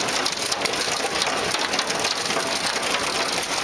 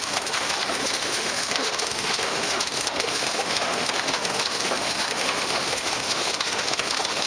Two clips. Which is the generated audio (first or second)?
second